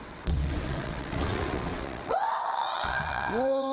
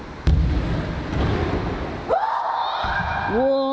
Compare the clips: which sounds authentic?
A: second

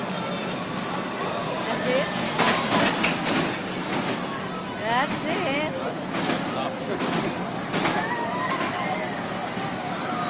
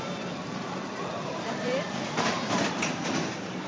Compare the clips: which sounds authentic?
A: first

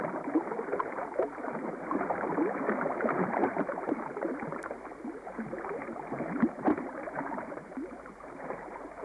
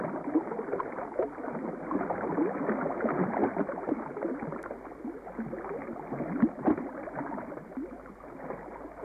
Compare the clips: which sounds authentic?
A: second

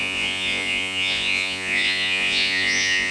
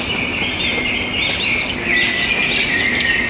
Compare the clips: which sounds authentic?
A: second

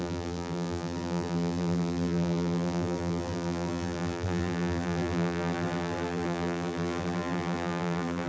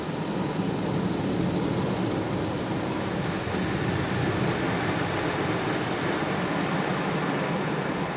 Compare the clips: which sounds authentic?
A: second